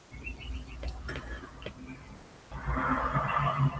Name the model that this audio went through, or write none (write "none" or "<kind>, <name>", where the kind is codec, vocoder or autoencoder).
none